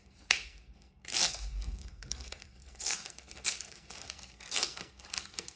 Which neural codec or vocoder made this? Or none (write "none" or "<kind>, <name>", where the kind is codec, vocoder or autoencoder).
codec, SNAC